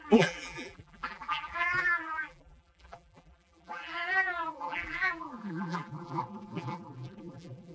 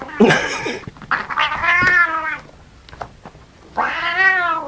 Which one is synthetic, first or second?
first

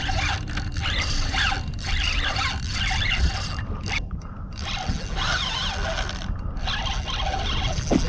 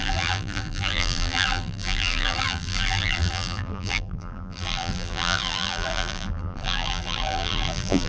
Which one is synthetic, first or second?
second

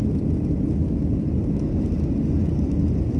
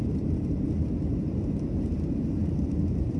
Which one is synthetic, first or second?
second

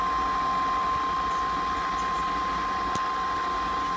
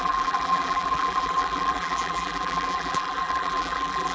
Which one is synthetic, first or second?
second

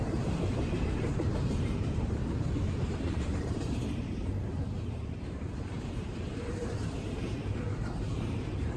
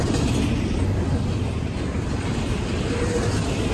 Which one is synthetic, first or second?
first